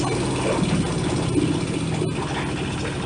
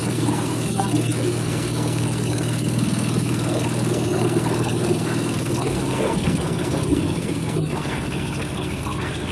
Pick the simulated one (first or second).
second